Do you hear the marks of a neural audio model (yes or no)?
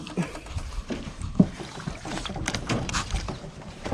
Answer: yes